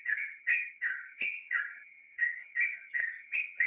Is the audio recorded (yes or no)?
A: no